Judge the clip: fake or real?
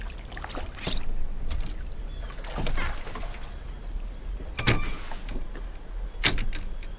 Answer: real